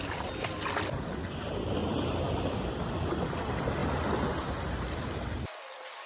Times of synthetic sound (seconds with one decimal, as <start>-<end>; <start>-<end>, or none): none